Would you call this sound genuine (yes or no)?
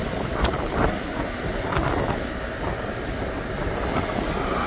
yes